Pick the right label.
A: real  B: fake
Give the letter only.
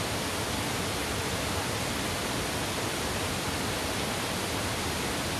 A